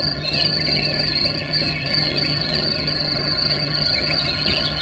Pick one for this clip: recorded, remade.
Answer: remade